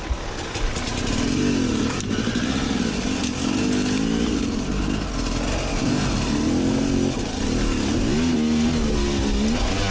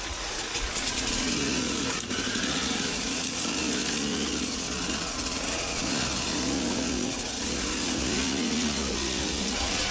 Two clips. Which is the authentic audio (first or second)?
first